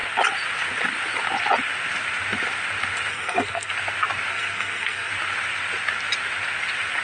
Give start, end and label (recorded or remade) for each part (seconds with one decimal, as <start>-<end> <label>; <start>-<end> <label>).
0.0-3.1 recorded; 3.1-3.7 remade; 3.7-4.3 recorded; 4.3-5.1 remade; 5.1-7.0 recorded